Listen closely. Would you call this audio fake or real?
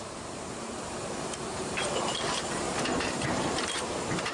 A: fake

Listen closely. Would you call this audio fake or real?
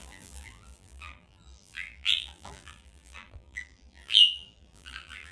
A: fake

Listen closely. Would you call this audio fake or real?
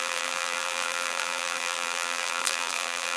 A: fake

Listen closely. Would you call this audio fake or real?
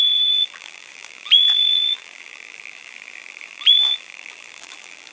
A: fake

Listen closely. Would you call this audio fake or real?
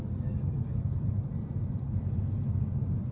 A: real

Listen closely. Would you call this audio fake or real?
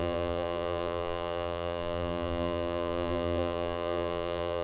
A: fake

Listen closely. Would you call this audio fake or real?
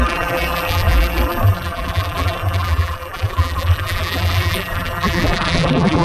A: fake